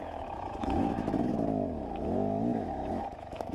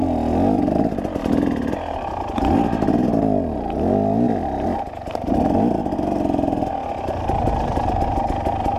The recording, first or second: second